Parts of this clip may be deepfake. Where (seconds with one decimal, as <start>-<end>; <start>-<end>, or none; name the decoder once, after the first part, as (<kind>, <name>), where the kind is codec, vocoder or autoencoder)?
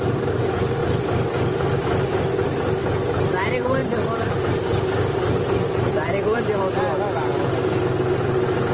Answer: 0.8-2.9 (vocoder, BigVGAN v2); 3.8-6.6